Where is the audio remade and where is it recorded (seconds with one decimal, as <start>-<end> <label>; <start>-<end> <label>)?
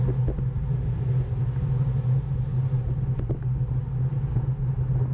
0.0-5.1 recorded